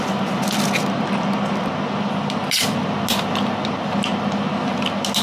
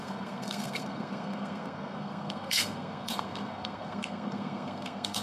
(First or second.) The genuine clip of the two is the first